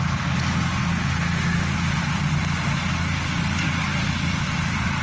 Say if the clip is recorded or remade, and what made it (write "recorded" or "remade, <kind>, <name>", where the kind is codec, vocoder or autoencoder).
recorded